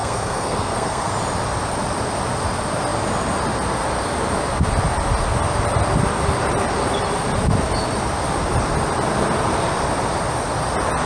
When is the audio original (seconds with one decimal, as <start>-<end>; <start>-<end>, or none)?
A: 1.1-11.1